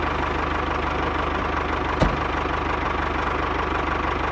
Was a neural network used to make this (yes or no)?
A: no